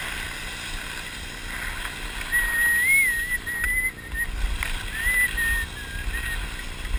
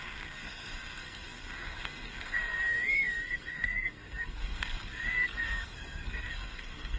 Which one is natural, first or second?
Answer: first